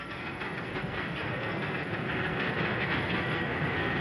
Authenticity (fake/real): fake